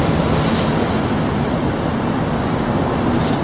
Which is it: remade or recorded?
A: recorded